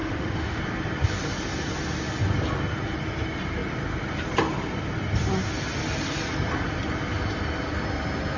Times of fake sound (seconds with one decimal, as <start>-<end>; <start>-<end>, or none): 0.0-0.6